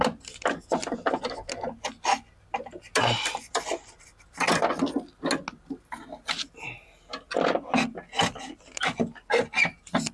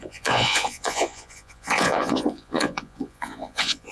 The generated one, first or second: second